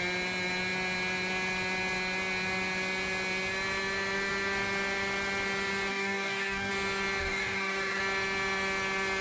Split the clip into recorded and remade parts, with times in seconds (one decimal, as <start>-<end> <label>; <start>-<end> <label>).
0.0-5.9 recorded; 5.9-6.7 remade; 6.7-7.2 recorded; 7.2-8.0 remade; 8.0-9.2 recorded